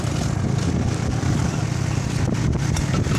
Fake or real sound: real